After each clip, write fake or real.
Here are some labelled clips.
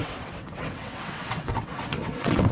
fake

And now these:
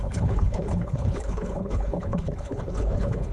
fake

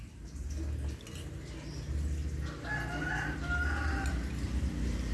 real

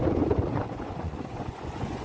fake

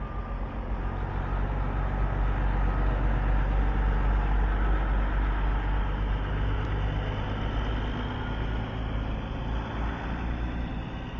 real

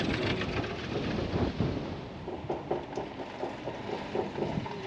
real